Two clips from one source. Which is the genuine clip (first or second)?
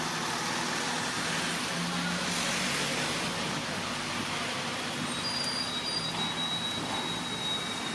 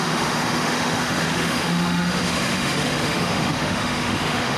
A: first